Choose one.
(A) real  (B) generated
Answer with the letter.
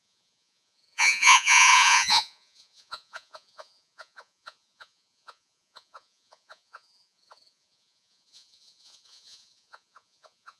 B